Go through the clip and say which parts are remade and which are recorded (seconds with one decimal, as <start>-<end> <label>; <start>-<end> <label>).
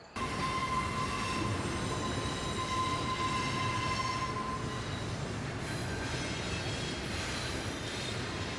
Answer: 0.0-5.8 recorded; 5.8-6.4 remade; 6.4-8.6 recorded